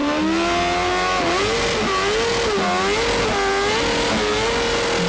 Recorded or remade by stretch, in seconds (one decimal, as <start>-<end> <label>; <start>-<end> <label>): 0.0-5.1 recorded